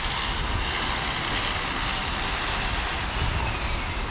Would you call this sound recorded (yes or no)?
yes